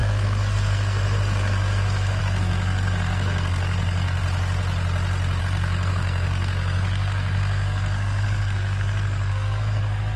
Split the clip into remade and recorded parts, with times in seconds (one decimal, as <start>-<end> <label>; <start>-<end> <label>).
0.0-4.2 remade; 4.2-5.4 recorded; 5.4-10.2 remade